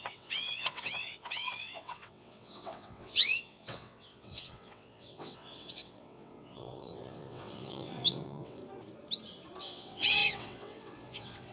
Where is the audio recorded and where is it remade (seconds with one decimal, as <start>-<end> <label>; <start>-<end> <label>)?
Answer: 0.0-8.6 remade; 8.6-9.6 recorded; 9.6-11.5 remade